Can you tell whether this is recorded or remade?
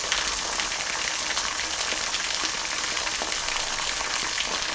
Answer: recorded